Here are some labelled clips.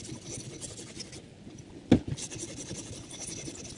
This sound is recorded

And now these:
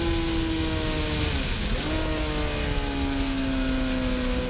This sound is recorded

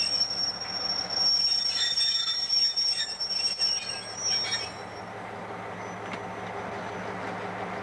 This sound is recorded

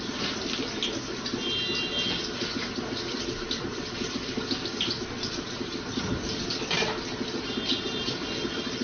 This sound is recorded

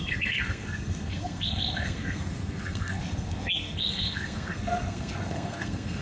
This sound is remade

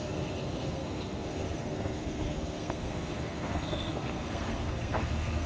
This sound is remade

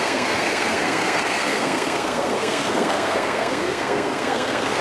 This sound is remade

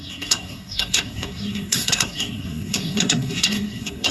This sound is remade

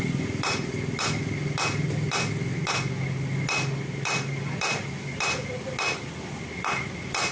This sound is recorded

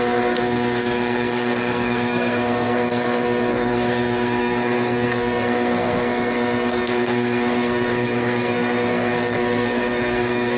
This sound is remade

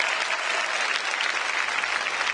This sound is recorded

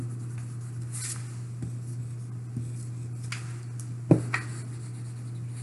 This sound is recorded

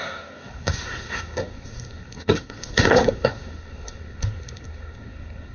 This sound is remade